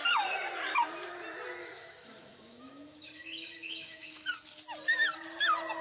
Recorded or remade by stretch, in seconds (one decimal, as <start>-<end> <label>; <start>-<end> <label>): 0.0-1.6 recorded; 1.6-4.3 remade; 4.3-5.8 recorded